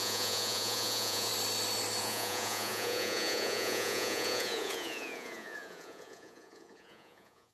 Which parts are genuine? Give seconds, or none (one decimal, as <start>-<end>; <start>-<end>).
1.3-2.0